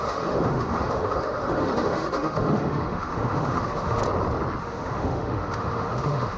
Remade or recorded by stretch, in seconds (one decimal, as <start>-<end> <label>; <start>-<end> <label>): 0.0-4.0 remade; 4.0-4.6 recorded; 4.6-6.4 remade